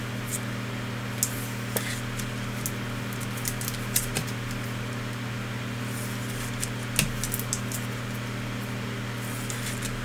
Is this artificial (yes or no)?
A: no